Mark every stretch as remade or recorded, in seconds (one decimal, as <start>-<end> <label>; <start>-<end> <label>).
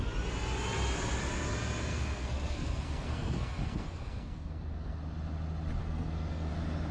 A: 0.0-1.9 recorded; 1.9-5.0 remade; 5.0-5.8 recorded; 5.8-6.5 remade; 6.5-6.9 recorded